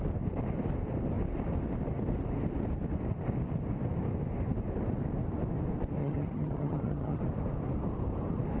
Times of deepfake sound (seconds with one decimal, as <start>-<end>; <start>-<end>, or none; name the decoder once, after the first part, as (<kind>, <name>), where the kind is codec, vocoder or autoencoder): 6.0-7.2 (vocoder, HiFi-GAN)